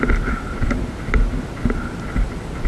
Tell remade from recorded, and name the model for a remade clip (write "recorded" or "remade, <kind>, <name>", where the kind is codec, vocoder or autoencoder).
recorded